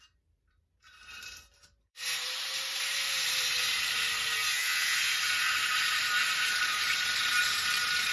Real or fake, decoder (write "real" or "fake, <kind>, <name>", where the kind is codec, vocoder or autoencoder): fake, vocoder, BigVGAN v2